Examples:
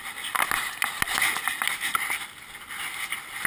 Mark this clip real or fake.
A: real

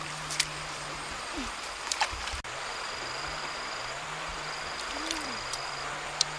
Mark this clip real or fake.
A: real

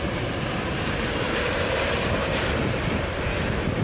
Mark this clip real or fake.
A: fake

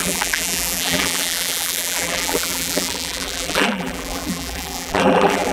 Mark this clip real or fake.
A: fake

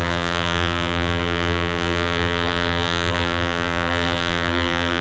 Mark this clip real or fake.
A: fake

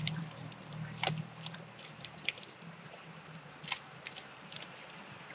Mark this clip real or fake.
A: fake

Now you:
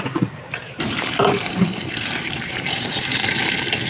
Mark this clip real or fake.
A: fake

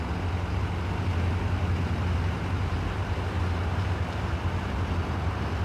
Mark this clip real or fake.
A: real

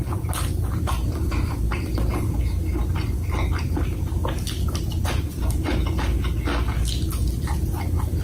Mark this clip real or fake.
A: real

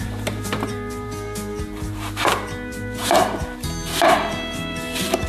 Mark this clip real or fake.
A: fake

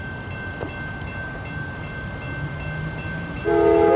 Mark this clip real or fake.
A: real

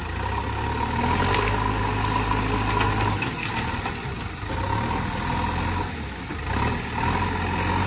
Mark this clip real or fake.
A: real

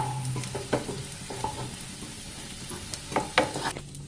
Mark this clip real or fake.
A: real